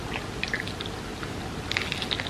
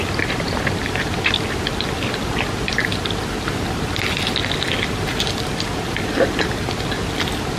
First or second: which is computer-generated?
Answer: second